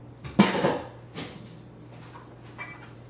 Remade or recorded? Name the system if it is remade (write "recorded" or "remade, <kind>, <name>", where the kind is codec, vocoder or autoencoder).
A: recorded